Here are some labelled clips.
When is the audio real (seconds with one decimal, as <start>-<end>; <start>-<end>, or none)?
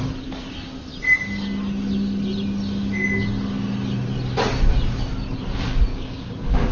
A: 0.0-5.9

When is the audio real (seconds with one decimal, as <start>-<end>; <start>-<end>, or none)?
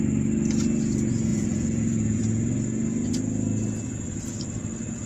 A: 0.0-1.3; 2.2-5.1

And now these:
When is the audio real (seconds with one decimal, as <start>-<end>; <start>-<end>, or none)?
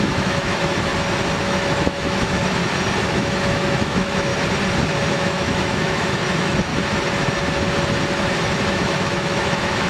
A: 0.9-1.4; 2.6-3.1; 4.3-5.1; 6.7-8.7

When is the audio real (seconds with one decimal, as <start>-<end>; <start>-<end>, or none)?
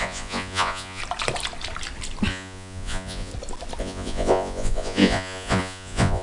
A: 1.0-2.3; 3.3-3.8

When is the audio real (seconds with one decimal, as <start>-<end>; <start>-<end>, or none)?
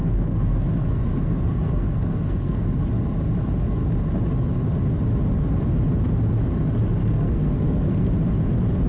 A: 2.8-7.0; 8.1-8.9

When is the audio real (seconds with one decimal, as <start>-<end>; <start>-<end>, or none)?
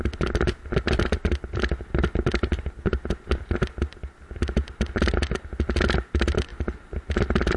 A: 0.0-7.6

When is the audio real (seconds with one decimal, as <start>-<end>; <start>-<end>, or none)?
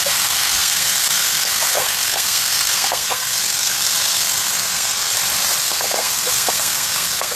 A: 5.1-5.6